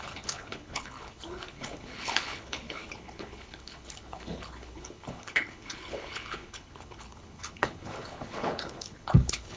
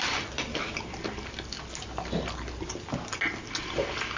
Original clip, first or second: second